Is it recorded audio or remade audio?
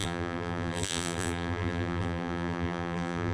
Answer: remade